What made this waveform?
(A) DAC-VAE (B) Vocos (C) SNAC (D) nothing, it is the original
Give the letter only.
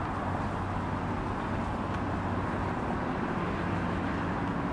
D